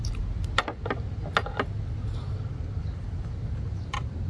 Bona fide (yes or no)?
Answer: yes